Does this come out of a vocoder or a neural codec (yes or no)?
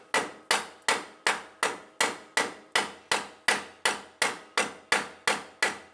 no